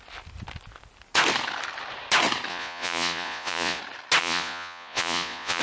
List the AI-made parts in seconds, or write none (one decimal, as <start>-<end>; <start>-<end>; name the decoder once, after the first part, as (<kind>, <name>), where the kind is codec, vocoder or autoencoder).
2.5-3.8 (vocoder, Vocos); 4.2-5.6